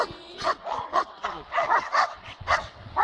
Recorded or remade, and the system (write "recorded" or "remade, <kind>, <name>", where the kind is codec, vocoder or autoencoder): remade, vocoder, WaveNeXt